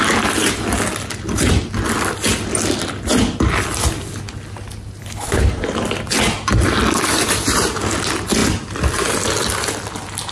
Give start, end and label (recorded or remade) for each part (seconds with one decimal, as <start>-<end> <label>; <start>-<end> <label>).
0.0-5.0 recorded; 5.0-5.5 remade; 5.5-10.3 recorded